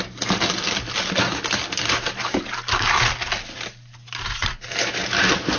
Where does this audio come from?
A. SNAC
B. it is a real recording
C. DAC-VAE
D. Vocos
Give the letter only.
B